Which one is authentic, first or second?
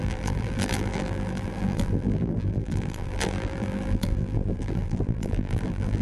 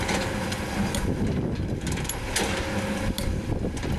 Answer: second